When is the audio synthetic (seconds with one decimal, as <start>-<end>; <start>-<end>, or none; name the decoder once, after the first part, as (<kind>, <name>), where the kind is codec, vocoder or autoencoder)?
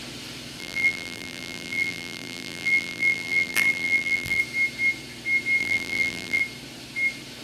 0.6-4.4 (vocoder, BigVGAN v2); 5.6-6.4